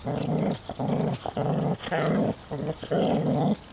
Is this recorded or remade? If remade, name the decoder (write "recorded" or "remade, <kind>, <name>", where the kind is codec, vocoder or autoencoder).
recorded